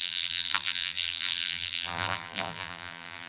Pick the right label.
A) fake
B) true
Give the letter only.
A